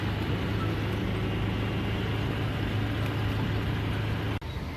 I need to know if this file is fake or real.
real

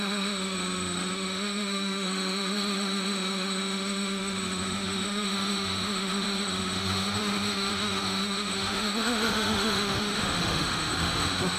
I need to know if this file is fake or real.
fake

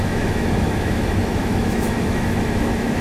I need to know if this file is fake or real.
fake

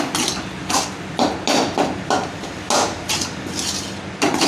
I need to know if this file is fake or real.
real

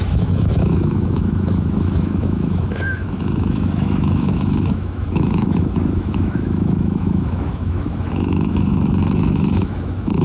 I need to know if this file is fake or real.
fake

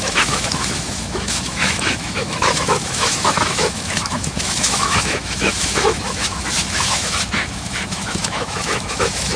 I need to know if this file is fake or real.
fake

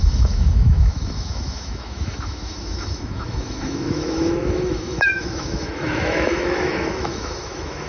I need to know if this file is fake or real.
fake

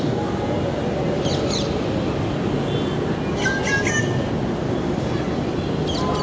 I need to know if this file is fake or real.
real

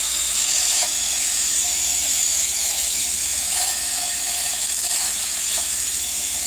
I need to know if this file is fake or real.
fake